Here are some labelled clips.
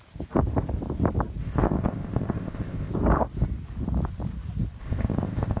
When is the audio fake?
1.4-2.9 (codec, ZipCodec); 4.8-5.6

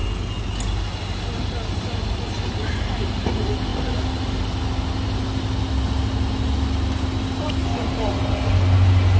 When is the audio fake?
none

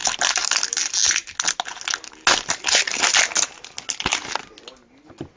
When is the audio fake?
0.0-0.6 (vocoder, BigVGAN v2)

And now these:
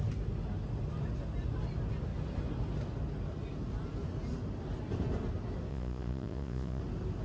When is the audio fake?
5.7-6.8 (vocoder, Vocos)

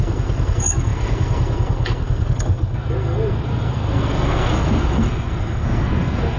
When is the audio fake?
0.0-6.4 (codec, SNAC)

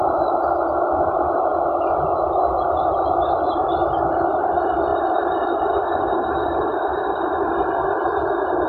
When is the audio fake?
0.0-1.5 (vocoder, BigVGAN v2); 2.8-8.7